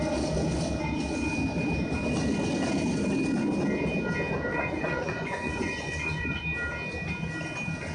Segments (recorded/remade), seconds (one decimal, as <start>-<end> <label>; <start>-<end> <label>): 0.0-4.5 recorded; 4.5-6.4 remade; 6.4-7.9 recorded